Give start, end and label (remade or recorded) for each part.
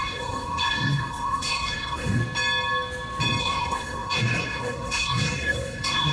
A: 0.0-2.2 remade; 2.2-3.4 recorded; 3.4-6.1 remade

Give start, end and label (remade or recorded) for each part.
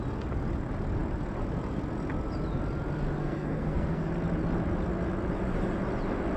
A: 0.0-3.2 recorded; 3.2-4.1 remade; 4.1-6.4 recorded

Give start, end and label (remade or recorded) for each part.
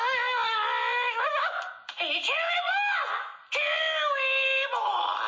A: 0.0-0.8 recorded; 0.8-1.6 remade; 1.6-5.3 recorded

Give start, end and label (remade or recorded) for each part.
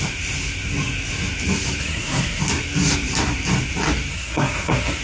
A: 0.0-1.8 recorded; 1.8-2.4 remade; 2.4-4.1 recorded; 4.1-5.0 remade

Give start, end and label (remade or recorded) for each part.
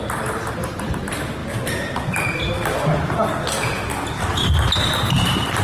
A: 0.0-1.4 remade; 1.4-4.8 recorded; 4.8-5.6 remade